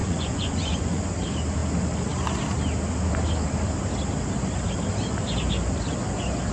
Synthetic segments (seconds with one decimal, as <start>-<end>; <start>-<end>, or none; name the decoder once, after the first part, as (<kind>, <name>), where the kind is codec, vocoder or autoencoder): 0.0-1.0 (vocoder, Vocos)